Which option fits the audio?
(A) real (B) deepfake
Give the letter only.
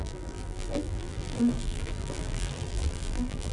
B